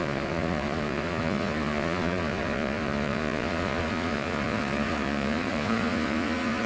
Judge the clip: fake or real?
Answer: fake